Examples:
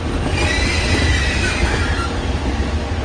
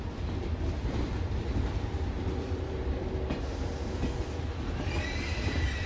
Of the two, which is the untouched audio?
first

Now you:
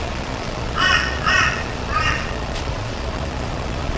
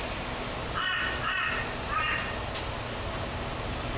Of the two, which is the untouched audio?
second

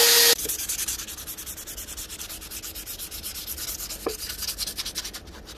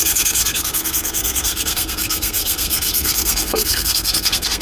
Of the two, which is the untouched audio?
first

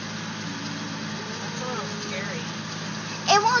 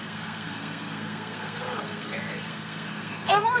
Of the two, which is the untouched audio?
first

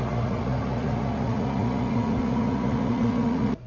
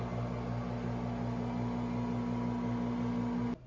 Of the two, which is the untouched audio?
second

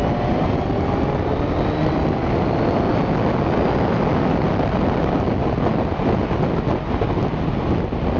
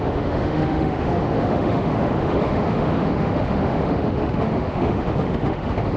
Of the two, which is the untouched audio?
first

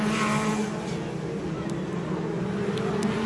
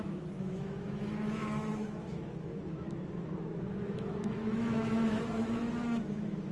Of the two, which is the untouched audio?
first